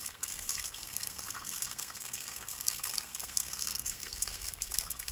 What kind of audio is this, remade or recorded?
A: remade